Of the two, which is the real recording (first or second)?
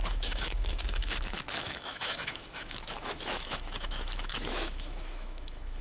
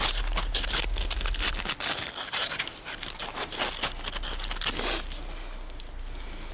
second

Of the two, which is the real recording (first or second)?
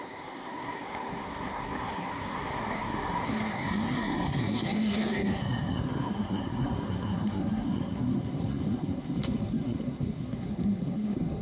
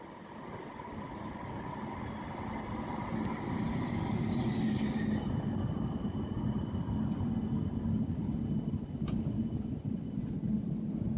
second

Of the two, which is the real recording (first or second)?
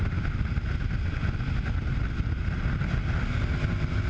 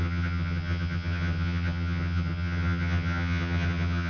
first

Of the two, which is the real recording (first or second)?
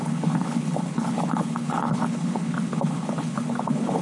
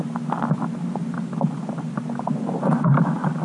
second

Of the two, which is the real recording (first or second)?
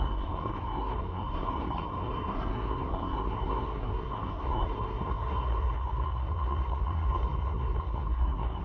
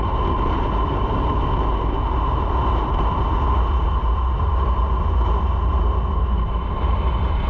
second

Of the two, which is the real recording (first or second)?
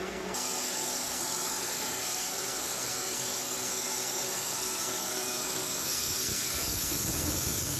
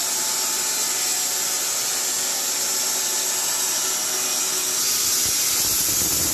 second